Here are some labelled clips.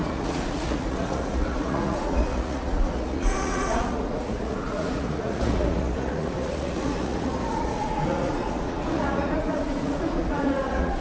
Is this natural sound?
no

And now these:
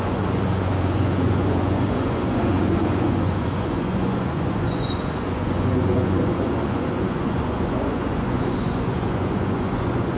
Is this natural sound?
no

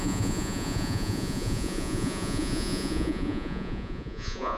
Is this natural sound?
no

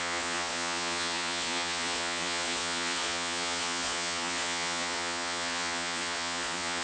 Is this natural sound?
no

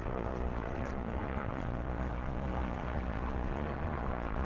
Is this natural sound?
no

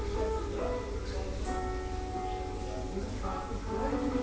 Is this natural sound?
yes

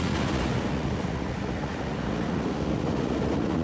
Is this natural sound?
no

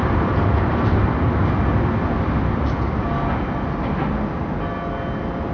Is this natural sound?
yes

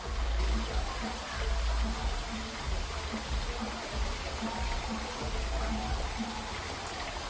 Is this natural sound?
yes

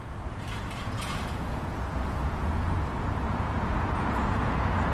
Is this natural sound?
no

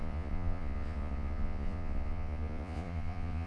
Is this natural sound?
no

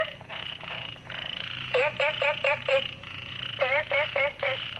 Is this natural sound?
no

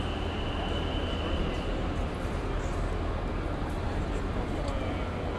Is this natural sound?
yes